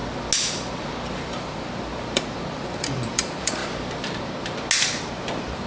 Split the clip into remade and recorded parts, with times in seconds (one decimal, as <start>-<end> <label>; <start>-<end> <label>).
0.0-1.4 recorded; 1.4-3.6 remade; 3.6-5.1 recorded; 5.1-5.7 remade